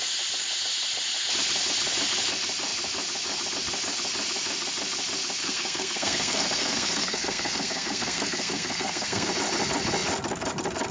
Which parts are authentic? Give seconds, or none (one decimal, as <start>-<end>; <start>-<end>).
0.0-5.4; 9.3-10.9